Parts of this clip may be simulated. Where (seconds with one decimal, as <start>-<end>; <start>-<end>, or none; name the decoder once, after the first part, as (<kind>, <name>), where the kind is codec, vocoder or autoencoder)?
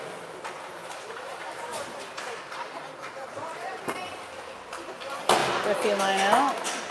0.8-3.8 (vocoder, BigVGAN v2)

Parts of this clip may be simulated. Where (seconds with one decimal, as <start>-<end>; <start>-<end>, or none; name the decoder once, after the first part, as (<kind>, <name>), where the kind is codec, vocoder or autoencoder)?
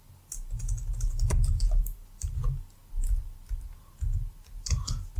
none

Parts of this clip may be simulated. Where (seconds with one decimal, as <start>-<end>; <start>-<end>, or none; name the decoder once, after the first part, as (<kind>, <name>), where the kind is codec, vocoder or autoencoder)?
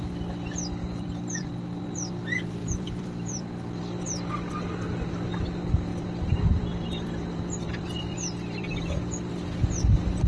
0.8-2.2 (vocoder, BigVGAN v2); 2.6-3.8; 5.9-9.3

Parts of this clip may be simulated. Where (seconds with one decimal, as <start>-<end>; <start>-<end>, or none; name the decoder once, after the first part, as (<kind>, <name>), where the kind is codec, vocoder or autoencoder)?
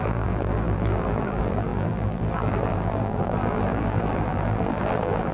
0.0-5.3 (vocoder, BigVGAN v2)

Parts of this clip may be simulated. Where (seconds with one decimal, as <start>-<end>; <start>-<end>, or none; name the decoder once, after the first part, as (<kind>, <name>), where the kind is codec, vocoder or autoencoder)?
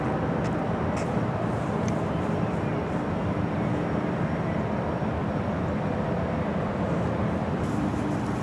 7.4-8.0 (vocoder, BigVGAN v2)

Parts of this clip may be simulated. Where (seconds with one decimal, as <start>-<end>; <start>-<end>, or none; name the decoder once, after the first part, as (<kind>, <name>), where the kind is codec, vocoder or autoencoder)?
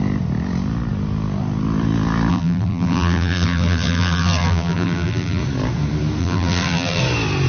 2.3-5.4 (vocoder, BigVGAN v2); 6.2-7.0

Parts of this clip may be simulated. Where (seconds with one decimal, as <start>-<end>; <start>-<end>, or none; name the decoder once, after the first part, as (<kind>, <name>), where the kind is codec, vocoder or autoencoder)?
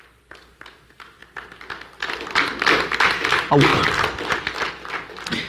1.2-3.3 (vocoder, BigVGAN v2); 3.7-4.3